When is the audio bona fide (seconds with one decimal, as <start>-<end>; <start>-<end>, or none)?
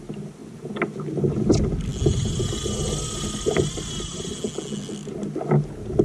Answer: 0.0-6.0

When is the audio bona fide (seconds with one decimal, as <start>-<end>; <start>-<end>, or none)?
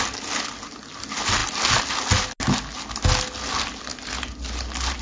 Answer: 0.0-5.0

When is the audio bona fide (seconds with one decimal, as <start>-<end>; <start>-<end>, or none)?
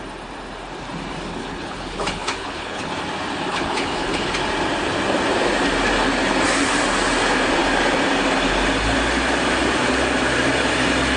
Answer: 0.0-1.4; 2.9-3.5; 4.3-11.2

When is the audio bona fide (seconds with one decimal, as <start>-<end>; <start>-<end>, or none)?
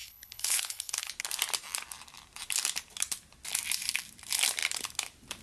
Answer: 1.1-5.4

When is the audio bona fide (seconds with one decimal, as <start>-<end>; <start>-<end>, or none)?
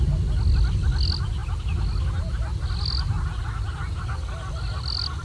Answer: 0.0-5.2